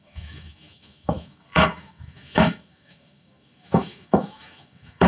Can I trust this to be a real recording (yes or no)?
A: no